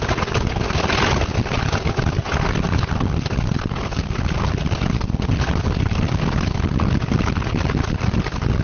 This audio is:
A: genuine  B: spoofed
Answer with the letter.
A